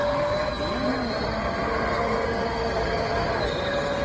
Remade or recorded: recorded